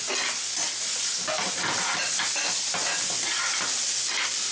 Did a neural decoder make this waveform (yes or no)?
no